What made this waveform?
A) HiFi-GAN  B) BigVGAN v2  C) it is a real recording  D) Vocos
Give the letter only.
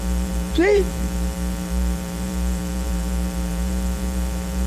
B